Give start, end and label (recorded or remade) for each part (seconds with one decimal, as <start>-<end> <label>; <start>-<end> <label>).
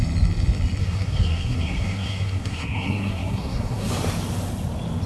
0.0-0.8 recorded; 0.8-3.9 remade; 3.9-5.1 recorded